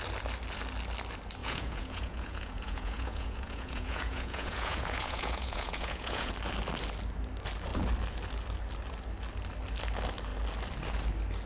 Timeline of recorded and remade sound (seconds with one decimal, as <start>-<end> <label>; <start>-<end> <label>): 0.0-1.4 recorded; 1.4-6.3 remade; 6.3-11.5 recorded

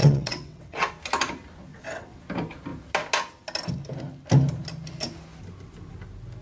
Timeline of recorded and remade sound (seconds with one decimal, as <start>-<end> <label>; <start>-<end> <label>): 0.0-0.9 remade; 0.9-1.7 recorded; 1.7-2.2 remade; 2.2-6.4 recorded

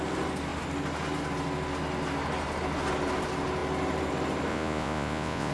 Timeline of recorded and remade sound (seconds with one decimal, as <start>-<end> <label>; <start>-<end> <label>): 0.0-4.5 recorded; 4.5-5.5 remade